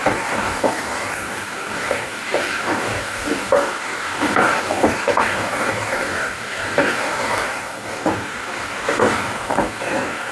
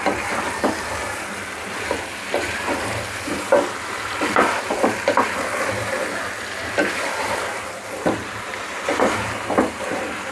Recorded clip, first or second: second